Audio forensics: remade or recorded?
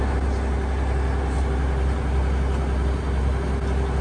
recorded